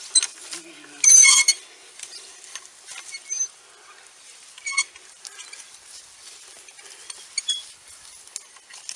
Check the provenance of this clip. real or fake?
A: real